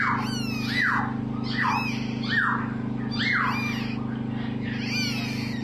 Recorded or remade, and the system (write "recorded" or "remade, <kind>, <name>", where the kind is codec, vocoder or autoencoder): recorded